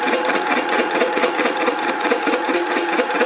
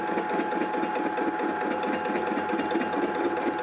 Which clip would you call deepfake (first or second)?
first